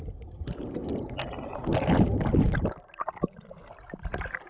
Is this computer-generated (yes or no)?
no